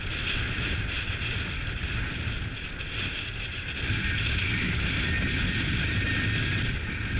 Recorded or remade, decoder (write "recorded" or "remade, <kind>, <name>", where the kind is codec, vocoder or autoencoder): recorded